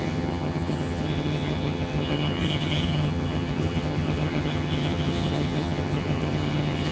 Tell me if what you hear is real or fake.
fake